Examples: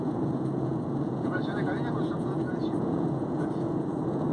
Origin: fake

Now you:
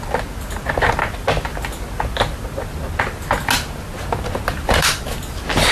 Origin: real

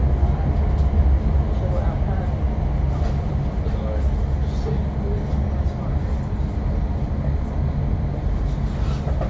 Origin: real